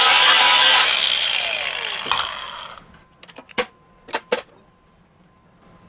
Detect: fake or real real